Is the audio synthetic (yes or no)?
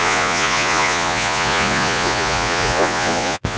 yes